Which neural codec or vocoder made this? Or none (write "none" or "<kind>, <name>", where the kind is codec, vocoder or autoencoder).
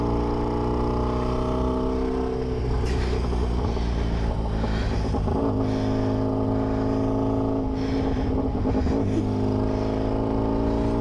none